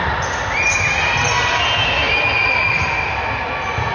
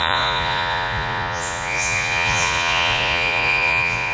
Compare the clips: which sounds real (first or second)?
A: first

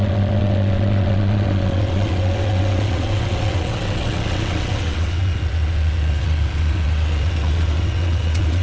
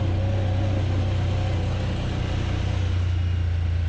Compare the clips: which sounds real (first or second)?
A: second